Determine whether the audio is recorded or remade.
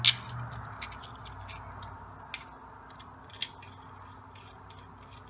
recorded